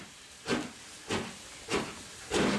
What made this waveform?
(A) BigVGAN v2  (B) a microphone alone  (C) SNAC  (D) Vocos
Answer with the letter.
B